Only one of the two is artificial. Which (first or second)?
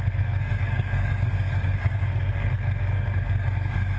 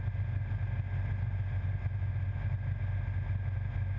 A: first